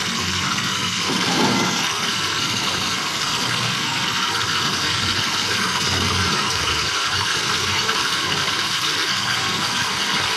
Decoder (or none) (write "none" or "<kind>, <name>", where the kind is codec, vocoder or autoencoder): codec, SNAC